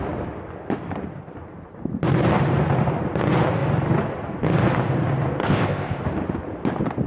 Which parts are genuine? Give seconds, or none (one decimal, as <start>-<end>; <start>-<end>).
0.0-5.4; 6.0-7.1